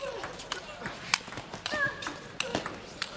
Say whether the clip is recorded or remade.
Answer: recorded